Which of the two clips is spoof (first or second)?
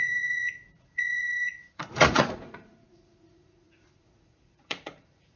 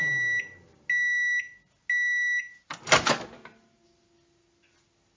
first